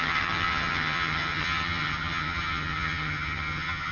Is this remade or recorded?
remade